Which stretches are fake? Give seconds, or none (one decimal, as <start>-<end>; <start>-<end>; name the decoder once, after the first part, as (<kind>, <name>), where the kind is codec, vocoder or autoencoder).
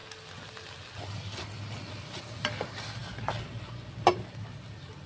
none